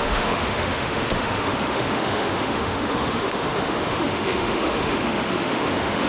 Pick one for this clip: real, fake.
fake